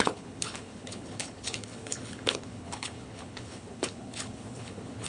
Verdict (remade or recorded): remade